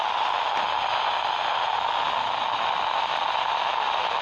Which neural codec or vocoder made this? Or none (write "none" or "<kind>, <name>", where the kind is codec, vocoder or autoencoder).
none